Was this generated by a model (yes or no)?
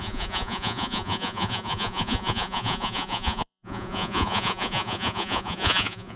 yes